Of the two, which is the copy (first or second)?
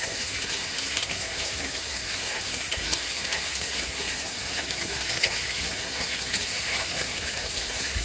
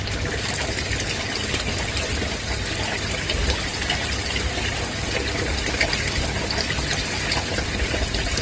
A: first